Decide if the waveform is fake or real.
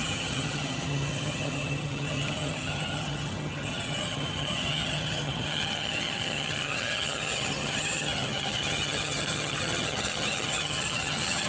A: fake